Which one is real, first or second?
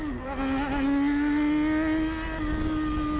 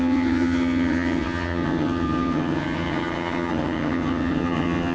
first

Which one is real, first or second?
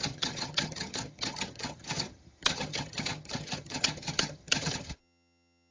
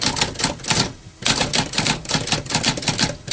second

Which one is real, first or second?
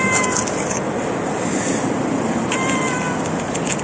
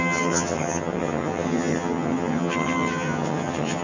first